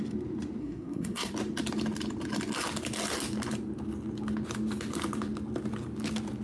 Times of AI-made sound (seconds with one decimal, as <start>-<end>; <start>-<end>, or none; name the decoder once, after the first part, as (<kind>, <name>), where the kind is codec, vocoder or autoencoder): 0.6-1.3 (codec, SNAC)